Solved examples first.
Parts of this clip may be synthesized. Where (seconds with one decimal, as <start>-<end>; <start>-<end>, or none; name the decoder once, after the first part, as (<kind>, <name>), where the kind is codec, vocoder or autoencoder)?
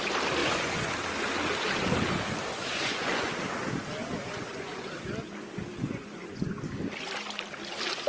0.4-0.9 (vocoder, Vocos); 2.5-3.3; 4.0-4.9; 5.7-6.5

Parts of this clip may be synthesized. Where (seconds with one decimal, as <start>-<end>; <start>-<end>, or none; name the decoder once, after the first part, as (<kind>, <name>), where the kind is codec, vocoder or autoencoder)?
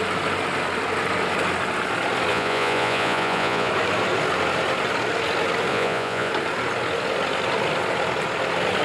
2.3-3.7 (vocoder, Vocos); 5.7-6.3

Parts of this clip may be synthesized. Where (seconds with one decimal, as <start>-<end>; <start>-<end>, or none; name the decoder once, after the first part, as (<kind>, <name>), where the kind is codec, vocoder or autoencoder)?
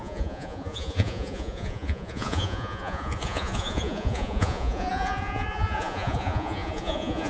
0.0-7.3 (vocoder, Vocos)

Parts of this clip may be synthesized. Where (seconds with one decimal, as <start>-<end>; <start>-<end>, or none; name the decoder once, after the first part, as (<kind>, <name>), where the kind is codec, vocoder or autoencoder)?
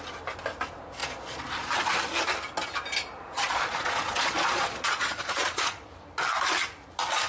1.0-1.7 (vocoder, Vocos); 3.3-5.9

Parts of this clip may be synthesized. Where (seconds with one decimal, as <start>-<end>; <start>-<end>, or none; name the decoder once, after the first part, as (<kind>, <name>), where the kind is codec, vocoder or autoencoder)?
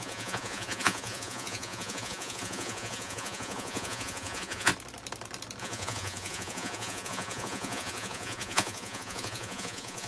0.0-4.7 (vocoder, Vocos); 5.6-10.1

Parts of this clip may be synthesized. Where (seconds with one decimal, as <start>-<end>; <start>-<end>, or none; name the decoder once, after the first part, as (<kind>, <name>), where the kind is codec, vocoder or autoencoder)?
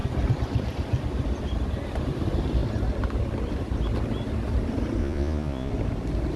5.0-5.7 (vocoder, Vocos)